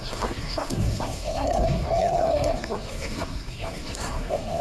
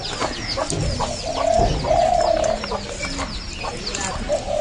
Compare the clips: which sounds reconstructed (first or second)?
first